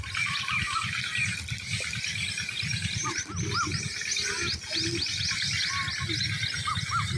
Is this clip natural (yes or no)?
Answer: yes